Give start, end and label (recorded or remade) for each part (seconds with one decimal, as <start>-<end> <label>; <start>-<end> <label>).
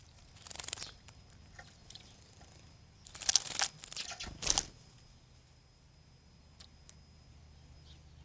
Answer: 0.0-1.1 remade; 1.1-8.2 recorded